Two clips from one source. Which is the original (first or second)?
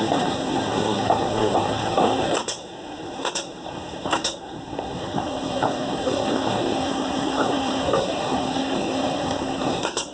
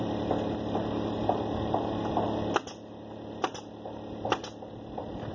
second